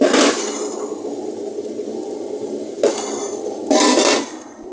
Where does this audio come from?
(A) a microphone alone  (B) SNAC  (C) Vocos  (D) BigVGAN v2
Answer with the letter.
A